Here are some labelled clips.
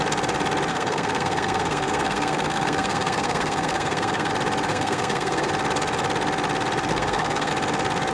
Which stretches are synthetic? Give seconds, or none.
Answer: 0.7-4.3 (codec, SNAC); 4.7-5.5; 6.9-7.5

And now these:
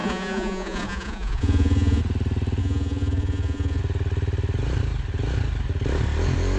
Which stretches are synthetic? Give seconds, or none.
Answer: 0.0-2.0 (vocoder, Vocos); 2.6-3.8

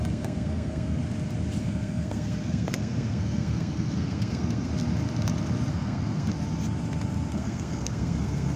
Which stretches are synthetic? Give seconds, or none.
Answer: 0.0-1.0 (codec, SNAC); 1.6-4.7; 5.7-6.3; 7.3-8.6

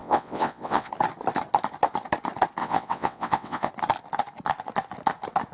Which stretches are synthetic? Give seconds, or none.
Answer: 0.0-0.9 (vocoder, WaveNeXt); 2.6-3.7

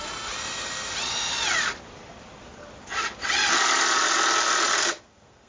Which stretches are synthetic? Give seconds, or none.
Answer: 4.7-5.5 (codec, SNAC)

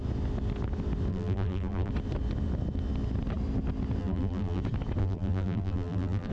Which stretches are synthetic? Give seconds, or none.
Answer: 1.1-1.9 (vocoder, BigVGAN v2); 4.0-4.6; 5.0-6.3